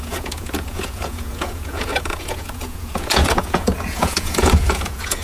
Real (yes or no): no